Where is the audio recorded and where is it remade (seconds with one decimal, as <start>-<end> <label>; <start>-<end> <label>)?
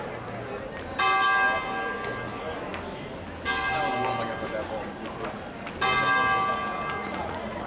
0.0-7.0 recorded; 7.0-7.7 remade